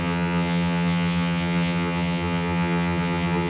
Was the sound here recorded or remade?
remade